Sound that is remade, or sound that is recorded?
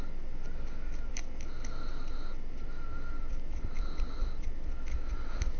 recorded